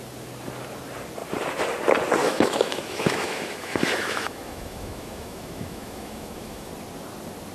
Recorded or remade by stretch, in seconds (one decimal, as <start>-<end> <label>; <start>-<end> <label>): 0.0-2.2 recorded; 2.2-6.7 remade; 6.7-7.5 recorded